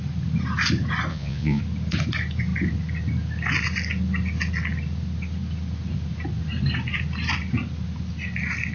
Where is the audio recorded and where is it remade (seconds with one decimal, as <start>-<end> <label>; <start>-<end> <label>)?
0.0-1.1 recorded; 1.1-1.6 remade; 1.6-8.7 recorded